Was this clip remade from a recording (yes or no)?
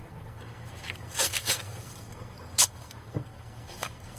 yes